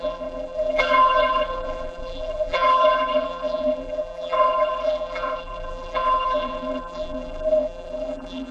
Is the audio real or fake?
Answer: fake